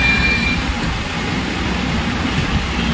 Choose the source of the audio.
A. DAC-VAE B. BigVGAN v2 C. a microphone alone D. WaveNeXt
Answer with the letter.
C